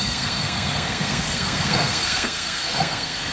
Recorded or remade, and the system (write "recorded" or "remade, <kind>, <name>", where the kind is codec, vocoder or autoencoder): remade, codec, SNAC